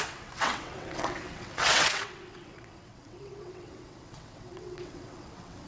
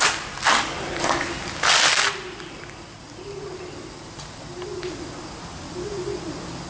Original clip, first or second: second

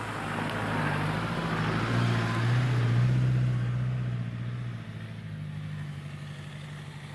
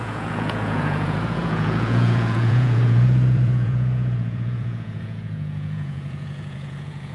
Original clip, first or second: first